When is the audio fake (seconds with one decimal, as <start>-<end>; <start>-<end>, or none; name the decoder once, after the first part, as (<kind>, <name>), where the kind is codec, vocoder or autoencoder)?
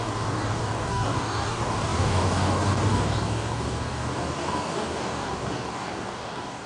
0.0-6.7 (codec, DAC)